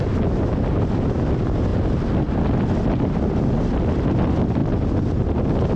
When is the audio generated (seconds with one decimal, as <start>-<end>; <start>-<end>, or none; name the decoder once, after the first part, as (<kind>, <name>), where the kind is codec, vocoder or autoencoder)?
none